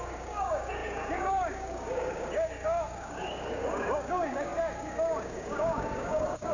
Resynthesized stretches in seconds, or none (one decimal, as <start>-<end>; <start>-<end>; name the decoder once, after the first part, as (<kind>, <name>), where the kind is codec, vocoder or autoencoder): 0.0-6.5 (codec, DAC)